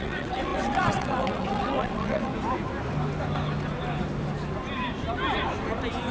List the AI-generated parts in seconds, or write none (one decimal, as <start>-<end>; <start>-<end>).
0.0-2.3